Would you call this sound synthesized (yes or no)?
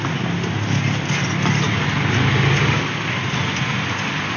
no